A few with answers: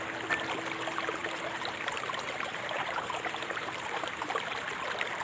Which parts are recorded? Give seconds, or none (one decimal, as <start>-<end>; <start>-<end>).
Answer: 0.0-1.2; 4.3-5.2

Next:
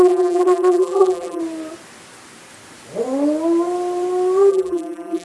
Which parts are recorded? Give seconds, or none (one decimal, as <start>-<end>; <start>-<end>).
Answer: 1.4-4.5

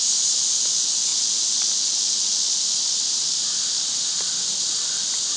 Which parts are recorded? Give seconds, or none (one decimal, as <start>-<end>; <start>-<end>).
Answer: 0.0-5.4